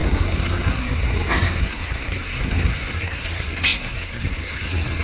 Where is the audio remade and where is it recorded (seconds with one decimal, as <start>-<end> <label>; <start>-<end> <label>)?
0.0-5.0 remade